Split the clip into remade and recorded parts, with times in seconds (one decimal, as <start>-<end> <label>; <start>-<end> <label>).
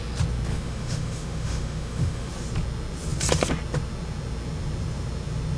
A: 0.0-0.5 recorded; 0.5-2.3 remade; 2.3-5.6 recorded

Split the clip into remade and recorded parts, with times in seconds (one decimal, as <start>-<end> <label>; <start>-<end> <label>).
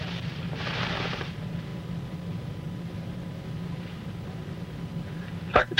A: 0.0-1.7 remade; 1.7-5.2 recorded; 5.2-5.8 remade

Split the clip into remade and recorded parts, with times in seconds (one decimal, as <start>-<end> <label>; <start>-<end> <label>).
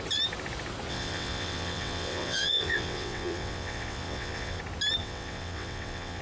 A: 0.0-0.9 recorded; 0.9-4.6 remade; 4.6-5.0 recorded; 5.0-6.2 remade